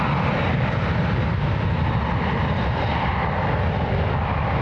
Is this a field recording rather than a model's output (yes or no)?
yes